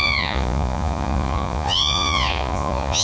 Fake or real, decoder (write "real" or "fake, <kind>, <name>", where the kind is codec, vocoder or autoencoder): fake, vocoder, Vocos